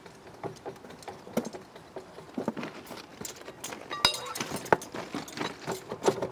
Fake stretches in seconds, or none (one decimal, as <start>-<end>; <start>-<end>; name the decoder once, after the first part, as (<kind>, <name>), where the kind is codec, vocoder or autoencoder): none